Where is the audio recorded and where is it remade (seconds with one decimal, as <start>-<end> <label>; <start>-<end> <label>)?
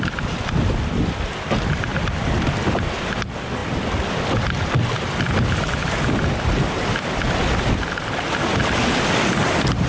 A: 0.0-1.9 recorded; 1.9-3.1 remade; 3.1-3.6 recorded; 3.6-7.1 remade; 7.1-9.9 recorded